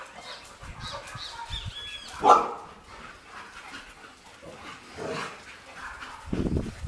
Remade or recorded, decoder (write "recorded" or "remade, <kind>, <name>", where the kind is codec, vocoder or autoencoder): recorded